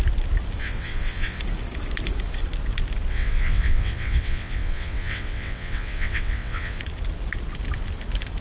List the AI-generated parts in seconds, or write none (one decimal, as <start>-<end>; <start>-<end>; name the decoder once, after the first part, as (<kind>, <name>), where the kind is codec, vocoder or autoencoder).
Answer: 0.6-1.4 (vocoder, WaveNeXt); 3.1-6.8